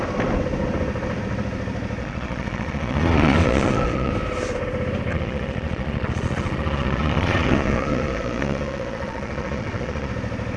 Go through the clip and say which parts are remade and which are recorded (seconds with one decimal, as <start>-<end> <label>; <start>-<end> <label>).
0.0-2.0 recorded; 2.0-4.1 remade; 4.1-5.1 recorded; 5.1-10.1 remade; 10.1-10.6 recorded